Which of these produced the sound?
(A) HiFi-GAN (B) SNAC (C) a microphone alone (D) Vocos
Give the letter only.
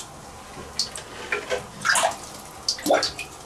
C